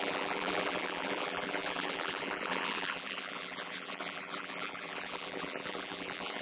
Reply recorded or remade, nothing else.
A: remade